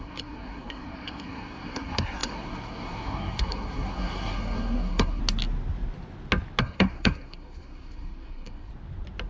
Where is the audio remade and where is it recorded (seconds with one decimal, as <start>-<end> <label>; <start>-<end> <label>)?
0.0-5.2 remade; 5.2-6.6 recorded; 6.6-8.7 remade; 8.7-9.3 recorded